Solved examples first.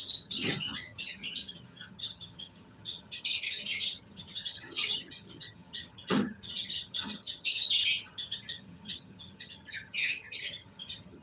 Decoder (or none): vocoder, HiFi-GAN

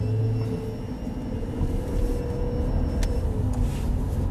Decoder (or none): none